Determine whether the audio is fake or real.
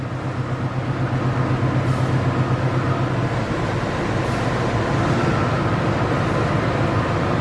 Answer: real